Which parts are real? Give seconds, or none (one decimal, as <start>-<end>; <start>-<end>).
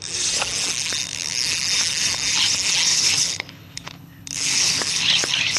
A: 0.0-2.9